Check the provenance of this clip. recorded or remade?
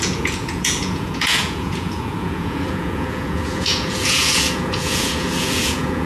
remade